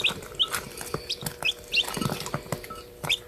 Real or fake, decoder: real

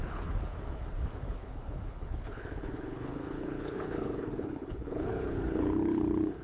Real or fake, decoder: fake, codec, HILCodec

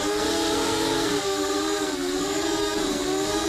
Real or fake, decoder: fake, codec, SNAC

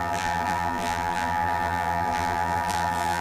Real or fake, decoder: fake, vocoder, BigVGAN v2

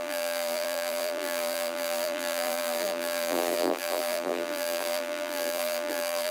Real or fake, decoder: fake, vocoder, BigVGAN v2